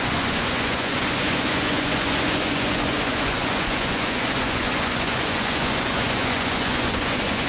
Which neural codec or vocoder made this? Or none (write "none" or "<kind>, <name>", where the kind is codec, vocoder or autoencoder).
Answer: vocoder, Vocos